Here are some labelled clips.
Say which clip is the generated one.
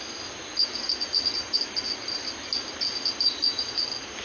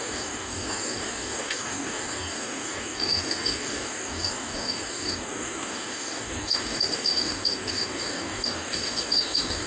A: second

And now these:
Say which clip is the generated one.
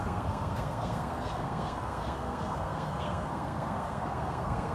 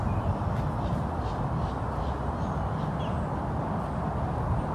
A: first